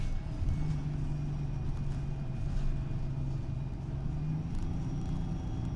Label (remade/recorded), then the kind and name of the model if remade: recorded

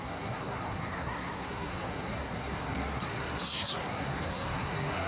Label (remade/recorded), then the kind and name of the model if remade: remade, codec, SNAC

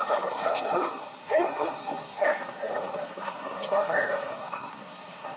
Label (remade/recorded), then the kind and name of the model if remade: remade, codec, SNAC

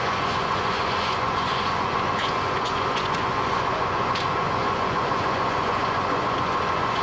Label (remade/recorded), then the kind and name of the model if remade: remade, vocoder, Vocos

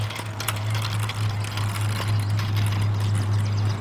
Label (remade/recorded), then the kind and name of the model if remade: recorded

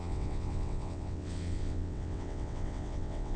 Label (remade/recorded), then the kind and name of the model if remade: remade, vocoder, WaveNeXt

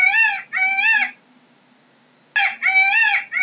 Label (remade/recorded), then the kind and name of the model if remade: recorded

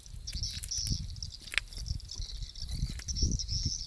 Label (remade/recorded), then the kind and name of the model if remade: recorded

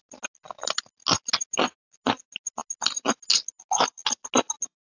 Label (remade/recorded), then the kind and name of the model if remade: recorded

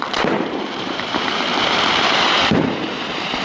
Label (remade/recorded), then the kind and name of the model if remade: remade, vocoder, BigVGAN v2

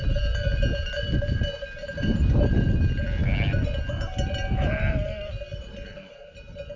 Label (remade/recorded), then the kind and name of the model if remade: recorded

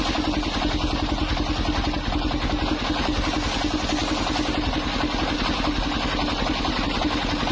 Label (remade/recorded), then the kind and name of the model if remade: recorded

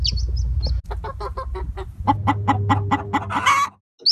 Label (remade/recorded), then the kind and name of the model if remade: recorded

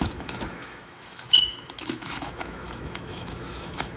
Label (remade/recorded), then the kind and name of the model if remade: remade, autoencoder, DAC-VAE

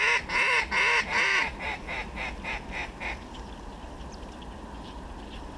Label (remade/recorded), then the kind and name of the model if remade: recorded